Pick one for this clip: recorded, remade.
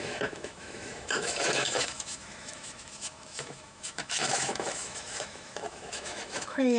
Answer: remade